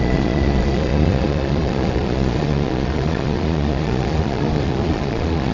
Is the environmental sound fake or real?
fake